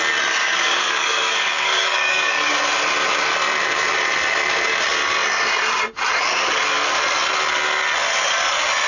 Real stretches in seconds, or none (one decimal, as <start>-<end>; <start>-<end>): 0.0-0.4; 2.5-8.9